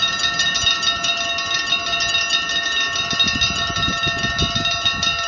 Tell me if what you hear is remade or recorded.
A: recorded